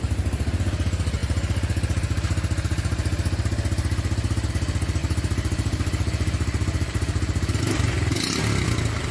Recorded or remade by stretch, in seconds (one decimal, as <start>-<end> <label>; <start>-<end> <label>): 0.0-5.0 recorded; 5.0-7.6 remade; 7.6-9.1 recorded